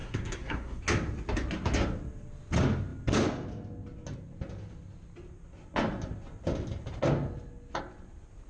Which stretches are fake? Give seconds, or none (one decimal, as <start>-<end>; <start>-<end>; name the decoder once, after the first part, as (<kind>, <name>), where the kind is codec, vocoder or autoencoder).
0.0-0.8 (codec, SNAC)